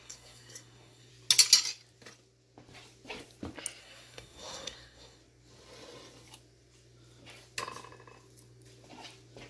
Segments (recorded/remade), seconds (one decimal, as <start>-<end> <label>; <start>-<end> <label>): 0.0-1.1 remade; 1.1-3.8 recorded; 3.8-5.2 remade; 5.2-9.5 recorded